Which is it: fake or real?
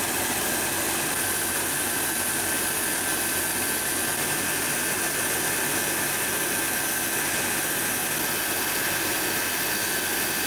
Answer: real